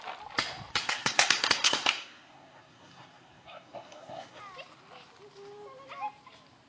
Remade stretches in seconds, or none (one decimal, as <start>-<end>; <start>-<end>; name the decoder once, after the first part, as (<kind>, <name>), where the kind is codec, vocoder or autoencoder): 0.7-4.4 (codec, SNAC)